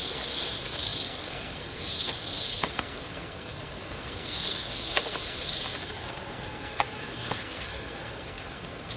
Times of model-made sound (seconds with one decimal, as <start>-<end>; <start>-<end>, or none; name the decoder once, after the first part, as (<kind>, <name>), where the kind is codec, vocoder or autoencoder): 0.0-9.0 (codec, SNAC)